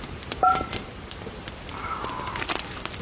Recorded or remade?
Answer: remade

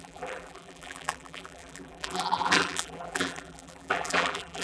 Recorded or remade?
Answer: remade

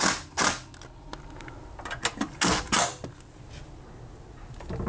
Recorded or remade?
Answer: recorded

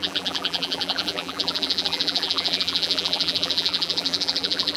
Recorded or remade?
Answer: remade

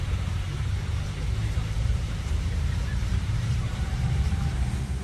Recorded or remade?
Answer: remade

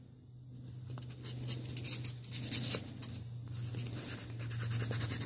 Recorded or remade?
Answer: recorded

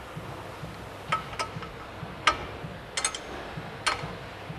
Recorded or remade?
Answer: recorded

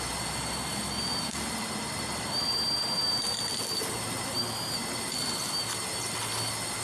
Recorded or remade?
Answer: recorded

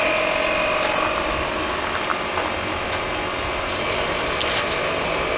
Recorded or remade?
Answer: recorded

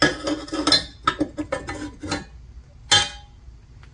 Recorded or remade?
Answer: recorded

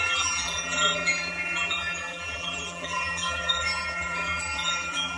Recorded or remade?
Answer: remade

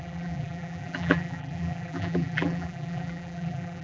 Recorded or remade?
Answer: remade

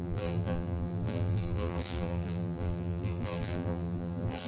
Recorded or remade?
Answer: remade